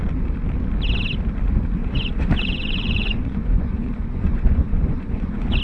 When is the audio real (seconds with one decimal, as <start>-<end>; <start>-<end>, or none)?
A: 0.0-1.8